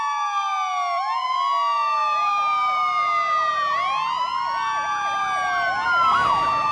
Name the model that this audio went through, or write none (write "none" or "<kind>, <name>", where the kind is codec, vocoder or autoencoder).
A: none